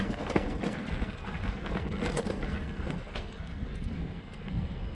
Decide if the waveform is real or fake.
fake